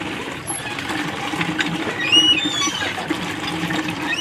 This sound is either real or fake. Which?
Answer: fake